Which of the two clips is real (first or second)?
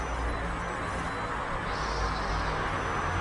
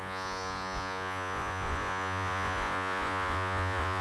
first